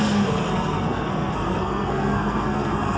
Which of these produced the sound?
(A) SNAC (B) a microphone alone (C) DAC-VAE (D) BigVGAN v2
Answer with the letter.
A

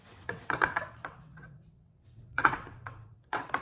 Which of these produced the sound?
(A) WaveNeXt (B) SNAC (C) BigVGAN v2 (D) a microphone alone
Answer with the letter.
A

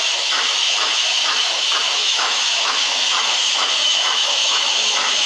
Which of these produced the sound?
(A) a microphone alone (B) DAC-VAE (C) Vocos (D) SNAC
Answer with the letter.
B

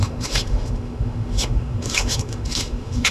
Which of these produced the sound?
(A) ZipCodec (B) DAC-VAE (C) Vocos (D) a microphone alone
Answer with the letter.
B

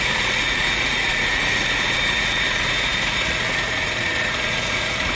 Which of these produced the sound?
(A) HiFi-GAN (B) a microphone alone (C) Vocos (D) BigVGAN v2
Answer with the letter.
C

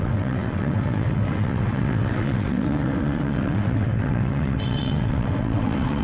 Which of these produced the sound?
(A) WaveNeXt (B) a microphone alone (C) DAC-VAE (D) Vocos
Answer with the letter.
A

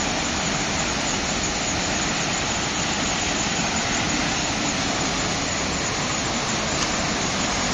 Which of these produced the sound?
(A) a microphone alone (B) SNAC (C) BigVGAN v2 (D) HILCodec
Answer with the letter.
A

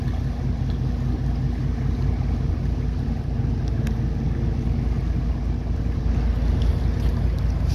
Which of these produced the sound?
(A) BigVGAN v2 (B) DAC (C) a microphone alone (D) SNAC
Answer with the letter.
C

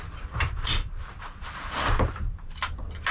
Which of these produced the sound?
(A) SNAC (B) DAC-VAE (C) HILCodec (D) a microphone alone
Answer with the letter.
D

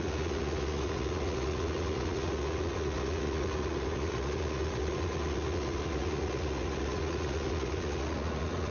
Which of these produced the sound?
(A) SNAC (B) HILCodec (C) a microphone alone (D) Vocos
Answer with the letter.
D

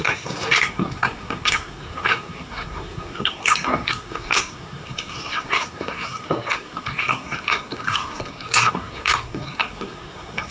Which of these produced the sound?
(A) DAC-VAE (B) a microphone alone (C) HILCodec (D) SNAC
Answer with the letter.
D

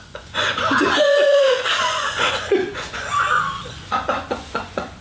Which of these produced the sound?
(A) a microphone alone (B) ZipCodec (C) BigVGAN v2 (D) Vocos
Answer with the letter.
D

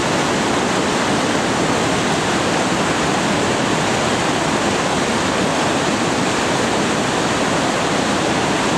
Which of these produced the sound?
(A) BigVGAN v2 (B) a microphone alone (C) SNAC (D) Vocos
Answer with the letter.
B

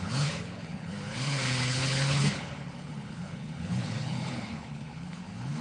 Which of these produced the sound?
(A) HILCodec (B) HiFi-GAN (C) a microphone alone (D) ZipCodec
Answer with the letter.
A